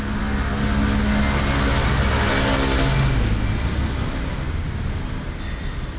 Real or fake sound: real